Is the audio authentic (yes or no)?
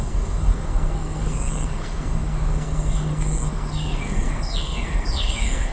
no